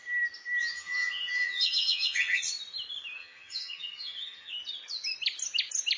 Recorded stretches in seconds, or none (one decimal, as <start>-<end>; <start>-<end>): 0.0-0.6; 2.4-3.2; 4.5-6.0